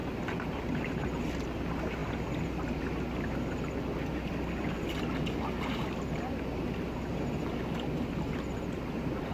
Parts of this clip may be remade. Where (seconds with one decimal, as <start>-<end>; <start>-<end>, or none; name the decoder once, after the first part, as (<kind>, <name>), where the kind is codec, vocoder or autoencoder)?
none

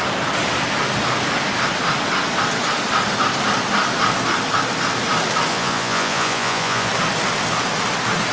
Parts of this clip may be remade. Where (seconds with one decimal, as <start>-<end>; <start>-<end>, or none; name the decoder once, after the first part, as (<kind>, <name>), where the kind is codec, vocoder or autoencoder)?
5.5-6.9 (vocoder, Vocos)

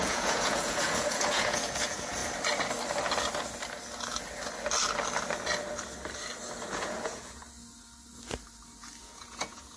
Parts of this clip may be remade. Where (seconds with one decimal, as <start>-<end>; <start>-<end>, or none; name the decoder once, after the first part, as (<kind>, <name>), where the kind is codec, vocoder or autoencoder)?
0.0-2.2 (vocoder, Vocos); 6.7-7.4; 9.0-9.8

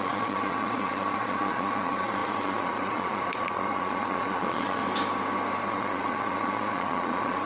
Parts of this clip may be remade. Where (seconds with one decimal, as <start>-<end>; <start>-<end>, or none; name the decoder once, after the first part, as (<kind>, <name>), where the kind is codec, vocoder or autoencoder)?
0.0-4.8 (vocoder, Vocos); 5.7-7.5

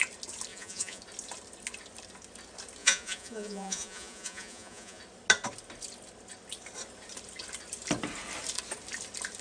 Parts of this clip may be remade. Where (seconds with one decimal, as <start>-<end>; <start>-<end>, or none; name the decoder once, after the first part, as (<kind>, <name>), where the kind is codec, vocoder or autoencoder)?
0.5-1.0 (vocoder, Vocos); 2.8-5.0

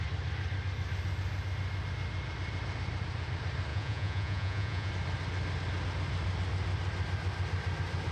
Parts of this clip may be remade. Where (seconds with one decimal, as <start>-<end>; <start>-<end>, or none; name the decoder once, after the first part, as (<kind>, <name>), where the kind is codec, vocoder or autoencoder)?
3.7-4.9 (vocoder, Vocos)

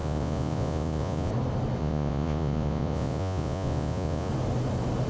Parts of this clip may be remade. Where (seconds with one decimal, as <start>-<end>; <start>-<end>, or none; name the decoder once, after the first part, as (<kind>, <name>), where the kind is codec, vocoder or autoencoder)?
0.0-1.3 (vocoder, Vocos); 1.8-4.3

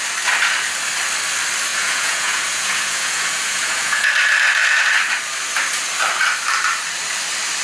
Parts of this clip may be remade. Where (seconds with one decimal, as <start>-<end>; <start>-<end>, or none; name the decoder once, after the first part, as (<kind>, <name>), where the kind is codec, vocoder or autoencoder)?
1.7-4.1 (vocoder, Vocos)